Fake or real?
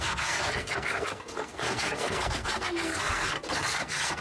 fake